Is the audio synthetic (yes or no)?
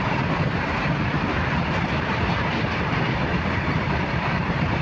yes